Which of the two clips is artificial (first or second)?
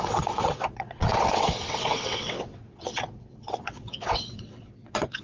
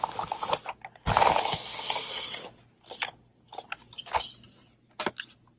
first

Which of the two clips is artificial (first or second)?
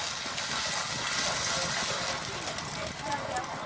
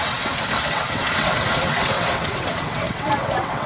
second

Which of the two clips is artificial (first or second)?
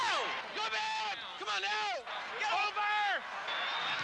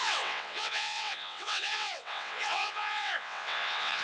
second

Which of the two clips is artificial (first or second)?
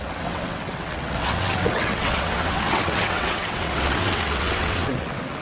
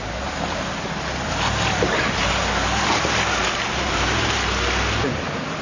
first